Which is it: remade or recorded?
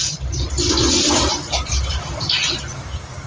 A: remade